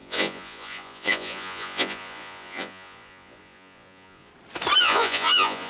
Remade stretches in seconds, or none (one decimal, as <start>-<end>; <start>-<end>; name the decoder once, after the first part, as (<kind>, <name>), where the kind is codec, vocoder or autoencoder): 0.0-4.3 (vocoder, Vocos); 4.8-5.7